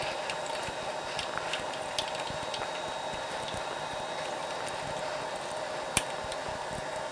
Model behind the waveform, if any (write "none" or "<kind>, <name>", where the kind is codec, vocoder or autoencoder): none